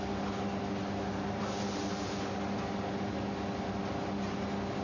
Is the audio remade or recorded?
recorded